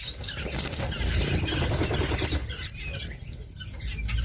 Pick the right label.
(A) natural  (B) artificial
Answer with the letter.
A